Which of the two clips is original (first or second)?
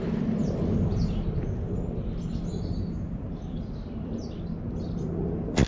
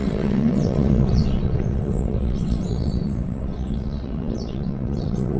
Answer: first